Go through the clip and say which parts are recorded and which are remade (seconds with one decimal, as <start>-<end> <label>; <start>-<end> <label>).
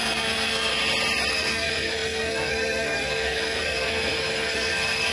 0.0-0.7 remade; 0.7-1.3 recorded; 1.3-5.1 remade